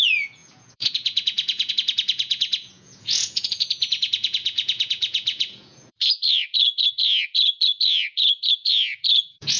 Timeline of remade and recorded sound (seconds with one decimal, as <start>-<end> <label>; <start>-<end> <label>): 0.0-9.6 remade